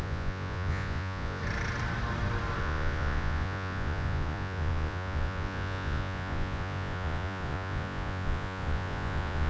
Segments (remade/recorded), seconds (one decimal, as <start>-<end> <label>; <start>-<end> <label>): 0.0-1.4 remade; 1.4-2.6 recorded; 2.6-9.5 remade

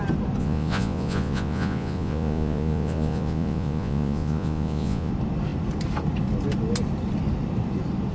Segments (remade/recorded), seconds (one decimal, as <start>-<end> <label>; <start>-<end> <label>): 0.0-0.4 recorded; 0.4-5.1 remade; 5.1-8.1 recorded

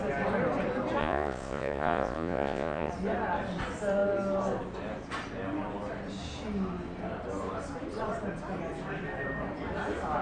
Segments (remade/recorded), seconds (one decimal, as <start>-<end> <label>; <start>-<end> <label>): 0.0-1.0 recorded; 1.0-2.9 remade; 2.9-10.2 recorded

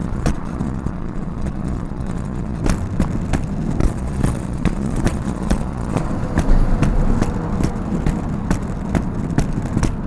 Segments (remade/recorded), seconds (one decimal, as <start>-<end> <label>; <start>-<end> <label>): 0.0-2.6 remade; 2.6-3.8 recorded; 3.8-6.1 remade; 6.1-10.1 recorded

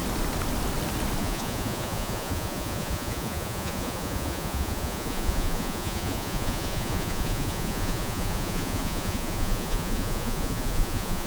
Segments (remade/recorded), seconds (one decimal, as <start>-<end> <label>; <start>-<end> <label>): 0.0-1.2 recorded; 1.2-11.3 remade

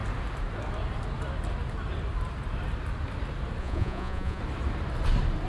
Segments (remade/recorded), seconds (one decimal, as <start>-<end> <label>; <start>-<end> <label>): 0.0-3.6 recorded; 3.6-4.4 remade; 4.4-5.5 recorded

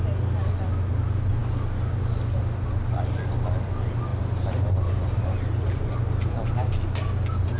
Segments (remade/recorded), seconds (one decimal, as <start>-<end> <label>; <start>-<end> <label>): 0.0-7.6 recorded